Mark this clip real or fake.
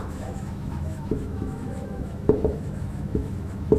fake